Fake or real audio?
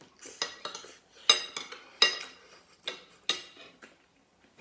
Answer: real